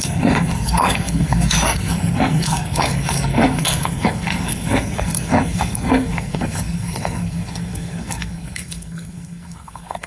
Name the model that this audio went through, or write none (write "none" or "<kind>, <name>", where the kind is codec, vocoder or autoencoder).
codec, SNAC